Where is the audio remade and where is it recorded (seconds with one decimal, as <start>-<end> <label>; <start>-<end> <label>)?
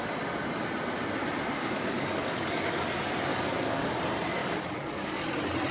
0.0-1.6 recorded; 1.6-2.7 remade; 2.7-3.3 recorded; 3.3-4.0 remade; 4.0-4.4 recorded; 4.4-5.2 remade; 5.2-5.7 recorded